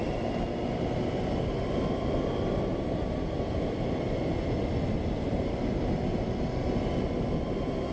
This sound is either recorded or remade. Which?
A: recorded